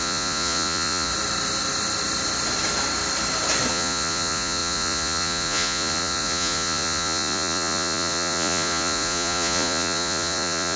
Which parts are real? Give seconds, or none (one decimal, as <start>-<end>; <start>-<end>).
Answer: 1.1-3.7